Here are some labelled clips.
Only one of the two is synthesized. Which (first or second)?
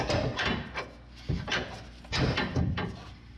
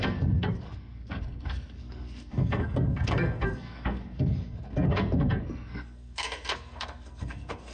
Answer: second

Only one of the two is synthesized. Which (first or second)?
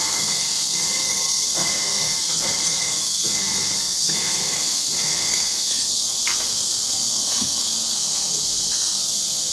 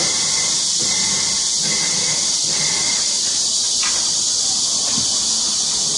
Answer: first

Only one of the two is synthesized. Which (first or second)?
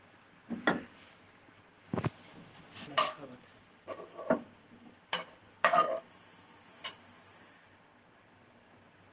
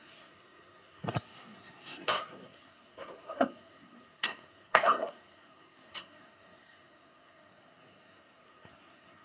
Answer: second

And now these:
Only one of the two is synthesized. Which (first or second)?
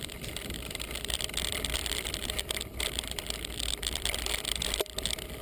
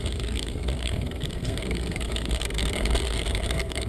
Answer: second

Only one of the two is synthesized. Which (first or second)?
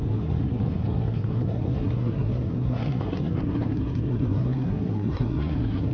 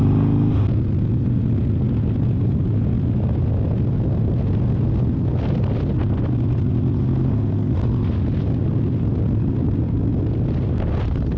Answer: first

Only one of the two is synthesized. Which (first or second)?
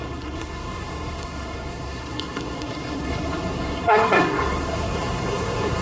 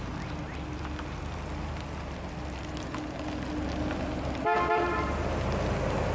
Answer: first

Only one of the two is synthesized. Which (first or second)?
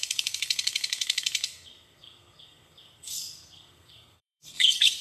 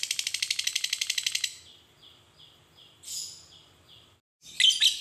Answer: first